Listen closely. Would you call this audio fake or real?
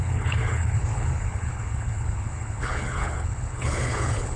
fake